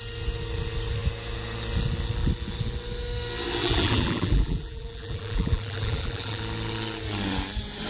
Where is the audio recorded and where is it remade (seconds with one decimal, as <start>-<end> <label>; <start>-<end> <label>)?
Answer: 0.0-3.6 recorded; 3.6-6.4 remade; 6.4-7.9 recorded